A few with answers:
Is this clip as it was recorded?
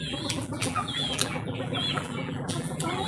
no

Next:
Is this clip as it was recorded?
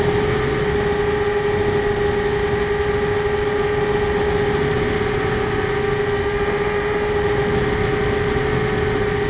yes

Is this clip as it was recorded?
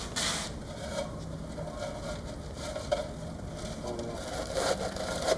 yes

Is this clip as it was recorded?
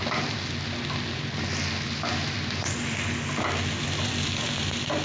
yes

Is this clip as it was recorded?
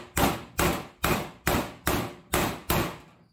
yes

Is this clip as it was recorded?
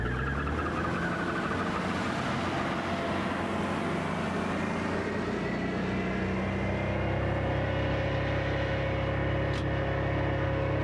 yes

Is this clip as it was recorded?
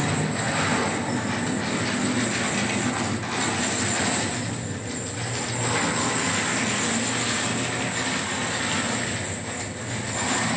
yes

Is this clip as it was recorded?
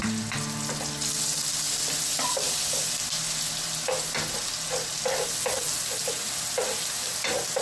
yes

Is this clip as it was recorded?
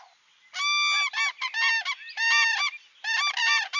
yes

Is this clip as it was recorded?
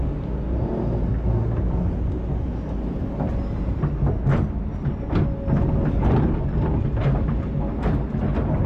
yes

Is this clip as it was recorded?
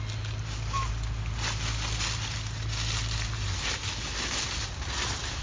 yes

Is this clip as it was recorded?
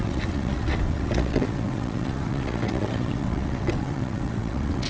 no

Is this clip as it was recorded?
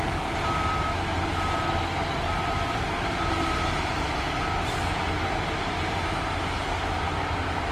yes